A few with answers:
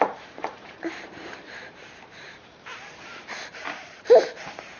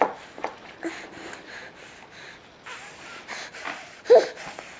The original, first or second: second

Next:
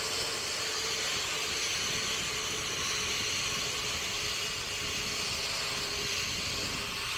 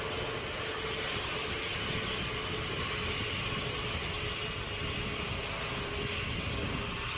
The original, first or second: second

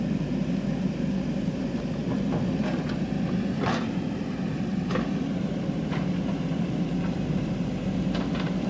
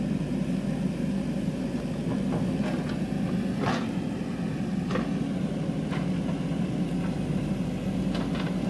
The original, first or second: second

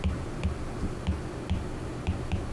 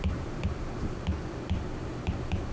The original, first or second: first